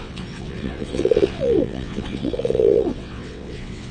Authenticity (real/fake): fake